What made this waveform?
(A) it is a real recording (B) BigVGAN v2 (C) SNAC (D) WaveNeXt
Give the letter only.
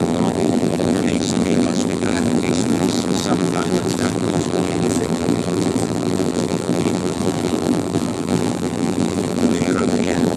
B